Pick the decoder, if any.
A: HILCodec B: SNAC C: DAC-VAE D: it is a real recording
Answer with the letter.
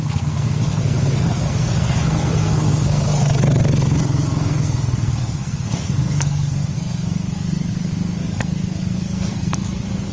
B